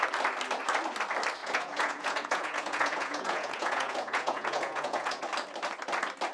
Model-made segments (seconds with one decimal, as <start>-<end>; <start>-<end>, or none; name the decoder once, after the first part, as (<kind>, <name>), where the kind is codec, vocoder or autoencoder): 1.4-5.2 (vocoder, Vocos)